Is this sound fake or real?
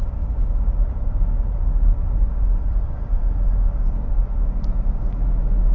real